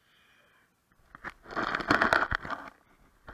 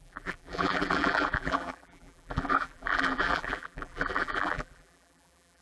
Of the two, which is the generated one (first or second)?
second